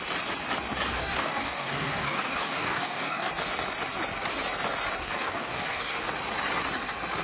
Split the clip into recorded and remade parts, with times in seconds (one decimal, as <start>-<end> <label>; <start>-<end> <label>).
0.0-0.9 recorded; 0.9-3.3 remade; 3.3-5.0 recorded; 5.0-6.0 remade; 6.0-7.2 recorded